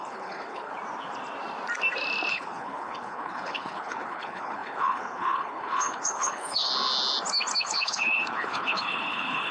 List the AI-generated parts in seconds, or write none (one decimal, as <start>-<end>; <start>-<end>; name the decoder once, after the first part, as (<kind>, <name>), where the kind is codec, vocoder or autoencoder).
0.0-0.7 (codec, HILCodec); 2.3-6.7; 7.6-9.5